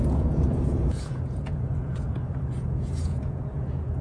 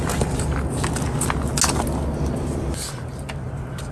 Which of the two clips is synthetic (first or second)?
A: first